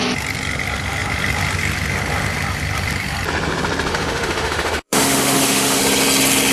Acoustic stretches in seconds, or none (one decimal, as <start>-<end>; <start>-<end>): 0.0-3.9; 5.8-6.5